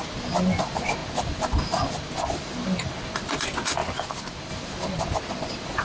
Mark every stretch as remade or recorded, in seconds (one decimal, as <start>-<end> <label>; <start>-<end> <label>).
0.0-5.8 recorded